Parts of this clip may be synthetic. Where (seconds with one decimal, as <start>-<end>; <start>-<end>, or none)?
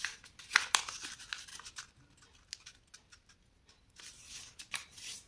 none